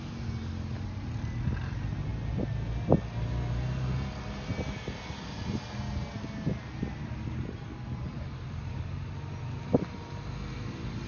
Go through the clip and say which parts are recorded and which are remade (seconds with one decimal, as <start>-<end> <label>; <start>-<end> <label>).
0.0-11.1 recorded

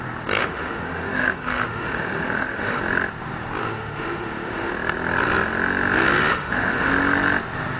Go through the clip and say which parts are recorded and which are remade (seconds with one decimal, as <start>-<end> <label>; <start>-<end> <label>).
0.0-0.4 recorded; 0.4-2.8 remade; 2.8-3.6 recorded; 3.6-4.7 remade; 4.7-6.3 recorded; 6.3-6.9 remade; 6.9-7.8 recorded

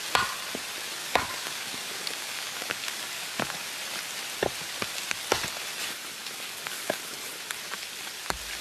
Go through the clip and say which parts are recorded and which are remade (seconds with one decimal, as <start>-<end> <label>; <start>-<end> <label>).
0.0-1.0 recorded; 1.0-3.7 remade; 3.7-6.2 recorded; 6.2-7.1 remade; 7.1-8.6 recorded

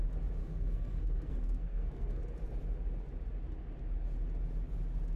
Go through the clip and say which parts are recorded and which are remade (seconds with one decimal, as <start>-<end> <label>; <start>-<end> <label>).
0.0-0.4 recorded; 0.4-2.2 remade; 2.2-5.2 recorded

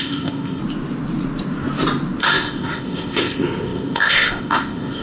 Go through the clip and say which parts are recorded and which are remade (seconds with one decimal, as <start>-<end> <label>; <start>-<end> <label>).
0.0-0.6 remade; 0.6-2.2 recorded; 2.2-5.0 remade

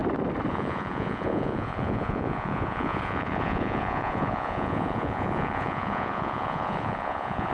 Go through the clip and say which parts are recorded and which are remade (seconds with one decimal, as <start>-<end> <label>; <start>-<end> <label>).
0.0-0.5 recorded; 0.5-7.5 remade